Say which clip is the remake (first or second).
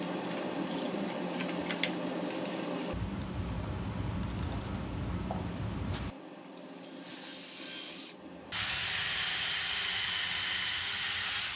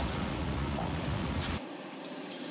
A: second